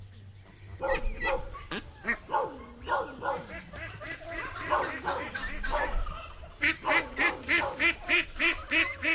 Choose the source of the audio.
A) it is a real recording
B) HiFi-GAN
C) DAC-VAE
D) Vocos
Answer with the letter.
A